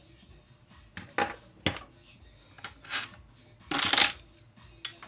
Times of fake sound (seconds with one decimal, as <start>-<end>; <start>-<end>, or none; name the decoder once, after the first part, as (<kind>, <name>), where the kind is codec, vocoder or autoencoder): none